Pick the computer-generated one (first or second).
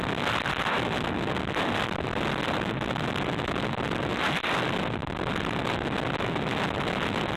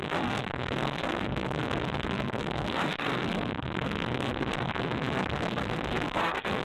second